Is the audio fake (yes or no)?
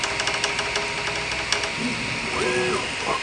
no